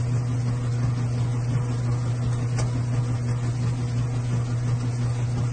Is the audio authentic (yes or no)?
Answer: yes